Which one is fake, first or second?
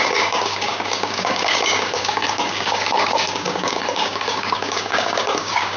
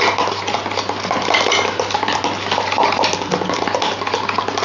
first